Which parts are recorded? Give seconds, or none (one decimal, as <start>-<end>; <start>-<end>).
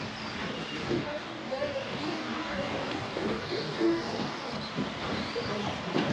0.0-0.8; 4.5-6.1